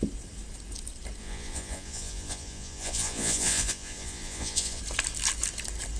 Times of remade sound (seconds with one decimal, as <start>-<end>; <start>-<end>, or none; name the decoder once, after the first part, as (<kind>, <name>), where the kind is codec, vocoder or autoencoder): 1.2-4.8 (vocoder, Vocos)